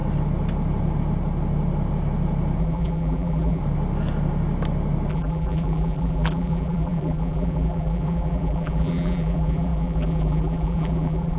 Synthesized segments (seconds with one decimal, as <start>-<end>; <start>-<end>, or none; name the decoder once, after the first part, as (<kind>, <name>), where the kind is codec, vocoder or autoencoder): 2.6-3.6 (vocoder, BigVGAN v2); 5.1-11.4